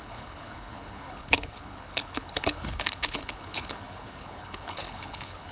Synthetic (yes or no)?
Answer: yes